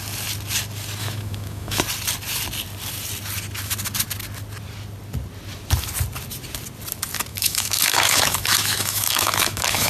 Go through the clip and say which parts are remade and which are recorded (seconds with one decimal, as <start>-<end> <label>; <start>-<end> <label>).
0.0-1.0 recorded; 1.0-1.8 remade; 1.8-7.3 recorded; 7.3-9.9 remade